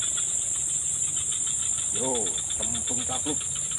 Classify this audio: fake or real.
real